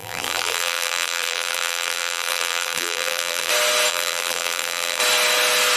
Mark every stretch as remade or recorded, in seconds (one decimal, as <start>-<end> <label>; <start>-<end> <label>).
0.0-3.5 remade; 3.5-3.9 recorded; 3.9-5.0 remade; 5.0-5.8 recorded